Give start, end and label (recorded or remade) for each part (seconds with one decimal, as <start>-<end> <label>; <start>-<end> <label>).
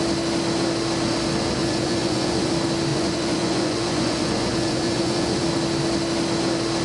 0.0-1.6 recorded; 1.6-2.5 remade; 2.5-2.9 recorded; 2.9-5.4 remade; 5.4-6.8 recorded